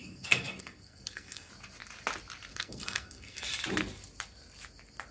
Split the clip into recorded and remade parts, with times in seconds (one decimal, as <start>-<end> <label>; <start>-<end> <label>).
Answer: 0.0-1.5 remade; 1.5-2.5 recorded; 2.5-3.5 remade; 3.5-5.1 recorded